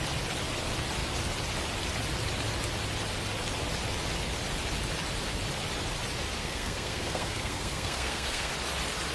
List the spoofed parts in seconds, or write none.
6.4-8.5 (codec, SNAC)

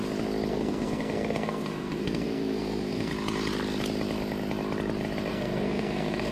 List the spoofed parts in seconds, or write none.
0.5-3.1 (codec, SNAC); 5.3-6.3

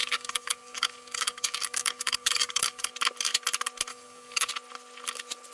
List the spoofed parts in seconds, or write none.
0.0-2.9 (codec, DAC); 3.9-4.5

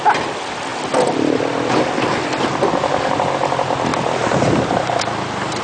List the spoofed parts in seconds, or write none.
0.7-2.7 (vocoder, BigVGAN v2); 3.9-5.0

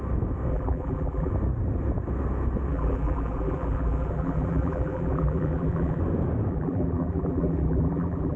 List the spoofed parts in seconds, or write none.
0.5-1.3 (vocoder, BigVGAN v2); 2.7-6.0; 6.5-8.4

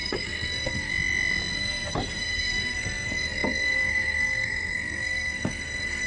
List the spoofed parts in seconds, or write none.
0.0-0.9 (codec, SNAC); 1.5-6.1

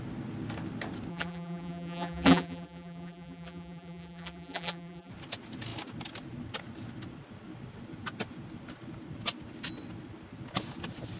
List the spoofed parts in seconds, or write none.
1.1-5.1 (vocoder, BigVGAN v2)